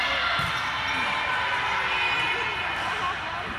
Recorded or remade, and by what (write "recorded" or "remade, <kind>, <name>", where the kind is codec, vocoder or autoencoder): recorded